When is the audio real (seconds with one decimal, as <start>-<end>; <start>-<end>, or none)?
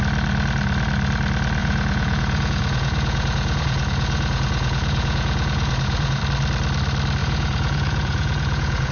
0.0-1.6; 6.2-7.2